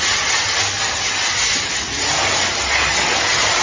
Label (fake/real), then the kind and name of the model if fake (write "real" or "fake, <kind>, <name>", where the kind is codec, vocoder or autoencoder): real